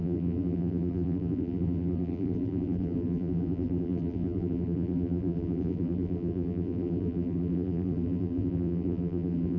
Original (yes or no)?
no